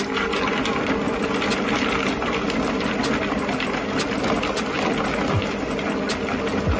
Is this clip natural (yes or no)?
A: yes